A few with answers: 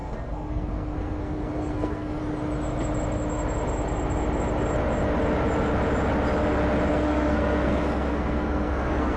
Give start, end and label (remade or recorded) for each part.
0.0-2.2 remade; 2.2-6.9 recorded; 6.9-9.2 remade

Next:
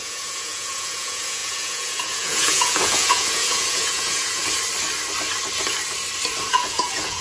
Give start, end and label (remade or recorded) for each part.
0.0-4.4 remade; 4.4-6.5 recorded; 6.5-7.2 remade

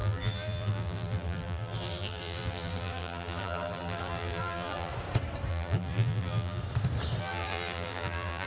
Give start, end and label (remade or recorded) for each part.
0.0-4.9 remade; 4.9-5.5 recorded; 5.5-6.6 remade; 6.6-7.2 recorded; 7.2-8.5 remade